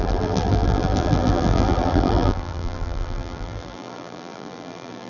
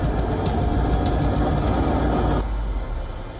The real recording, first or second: second